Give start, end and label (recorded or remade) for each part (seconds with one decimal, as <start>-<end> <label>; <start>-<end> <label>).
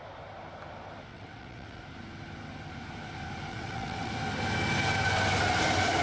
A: 0.0-1.1 recorded; 1.1-1.8 remade; 1.8-3.5 recorded; 3.5-4.1 remade; 4.1-6.0 recorded